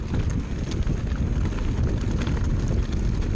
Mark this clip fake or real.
real